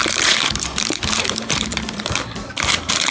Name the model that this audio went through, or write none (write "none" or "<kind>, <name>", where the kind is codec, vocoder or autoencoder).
vocoder, BigVGAN v2